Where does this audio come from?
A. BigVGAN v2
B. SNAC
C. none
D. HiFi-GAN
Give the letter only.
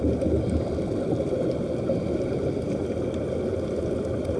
C